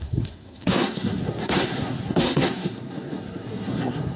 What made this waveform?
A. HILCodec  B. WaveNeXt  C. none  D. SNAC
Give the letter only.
D